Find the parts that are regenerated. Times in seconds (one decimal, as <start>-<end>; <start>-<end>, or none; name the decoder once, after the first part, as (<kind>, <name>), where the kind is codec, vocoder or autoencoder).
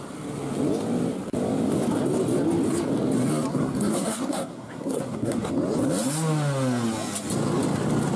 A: 3.5-5.5 (codec, SNAC)